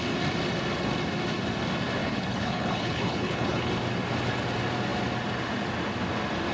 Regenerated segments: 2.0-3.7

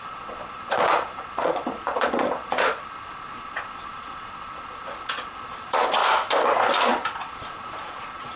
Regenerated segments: 0.0-6.0; 6.9-8.4

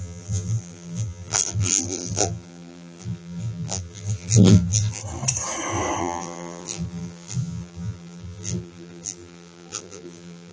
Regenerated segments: 0.0-5.0; 6.0-10.5

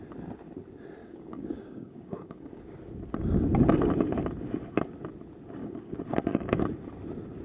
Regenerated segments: 1.0-2.6; 5.6-6.6

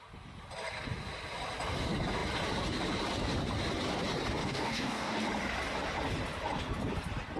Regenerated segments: 4.4-5.2

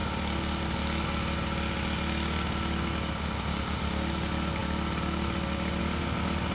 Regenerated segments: none